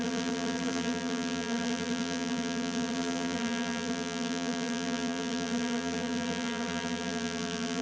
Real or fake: fake